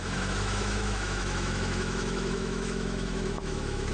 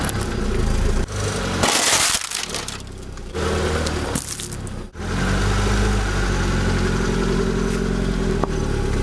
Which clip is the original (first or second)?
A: second